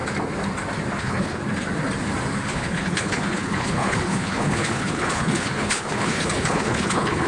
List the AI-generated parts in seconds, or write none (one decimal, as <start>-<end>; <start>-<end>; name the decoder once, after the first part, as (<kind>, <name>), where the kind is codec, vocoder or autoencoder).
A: 1.0-1.4 (codec, HILCodec); 2.5-7.3